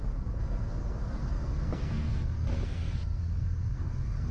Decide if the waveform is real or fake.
fake